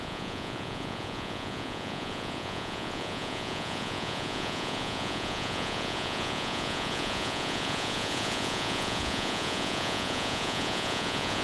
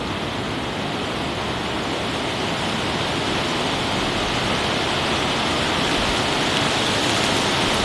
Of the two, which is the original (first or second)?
second